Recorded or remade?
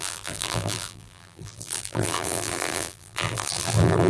remade